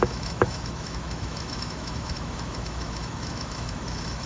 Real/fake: fake